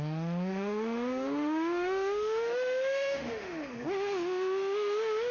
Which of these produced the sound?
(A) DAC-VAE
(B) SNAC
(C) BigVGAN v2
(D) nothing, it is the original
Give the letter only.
A